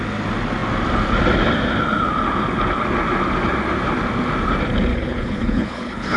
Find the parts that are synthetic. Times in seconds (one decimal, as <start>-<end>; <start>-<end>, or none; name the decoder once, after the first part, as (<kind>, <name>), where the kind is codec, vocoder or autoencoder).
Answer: 4.9-6.2 (codec, HILCodec)